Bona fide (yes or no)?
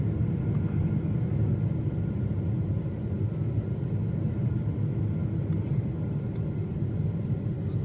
yes